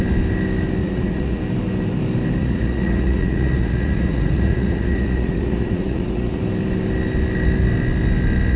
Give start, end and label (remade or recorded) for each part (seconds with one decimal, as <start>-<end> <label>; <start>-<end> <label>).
0.0-0.8 recorded; 0.8-1.4 remade; 1.4-2.4 recorded; 2.4-6.4 remade; 6.4-8.6 recorded